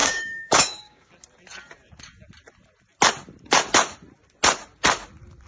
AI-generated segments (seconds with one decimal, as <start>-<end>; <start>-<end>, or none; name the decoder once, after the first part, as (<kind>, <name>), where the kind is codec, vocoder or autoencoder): 0.0-1.1 (codec, DAC)